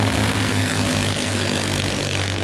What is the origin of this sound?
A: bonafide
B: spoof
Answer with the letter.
B